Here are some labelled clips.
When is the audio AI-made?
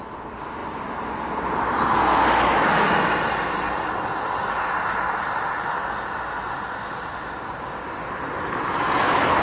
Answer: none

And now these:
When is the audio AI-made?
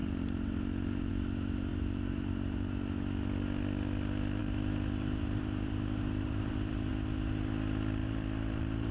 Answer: 0.0-1.1; 1.7-2.7; 4.4-6.9; 8.0-8.9